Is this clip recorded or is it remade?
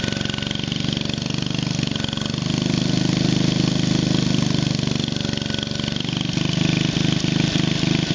recorded